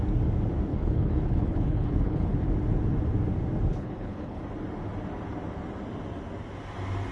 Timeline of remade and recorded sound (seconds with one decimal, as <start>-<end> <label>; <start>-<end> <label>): 0.0-0.7 recorded; 0.7-2.5 remade; 2.5-3.7 recorded; 3.7-4.4 remade; 4.4-7.1 recorded